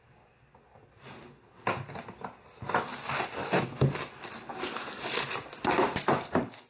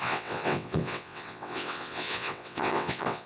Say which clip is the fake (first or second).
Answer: second